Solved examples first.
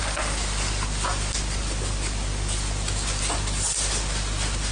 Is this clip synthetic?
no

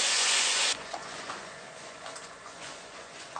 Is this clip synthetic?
yes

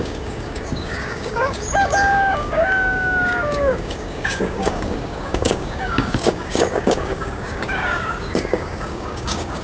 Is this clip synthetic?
yes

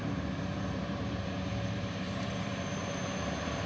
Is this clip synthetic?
yes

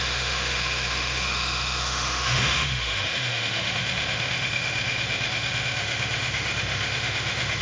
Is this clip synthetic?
yes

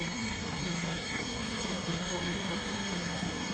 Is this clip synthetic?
yes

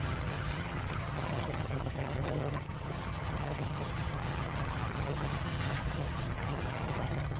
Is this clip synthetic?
yes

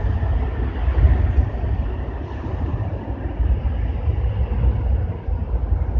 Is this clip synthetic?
no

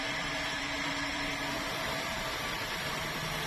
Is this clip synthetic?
yes